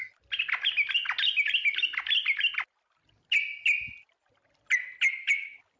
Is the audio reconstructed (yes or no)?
no